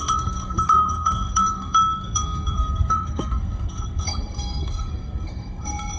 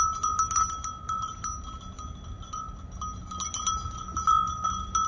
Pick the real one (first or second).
second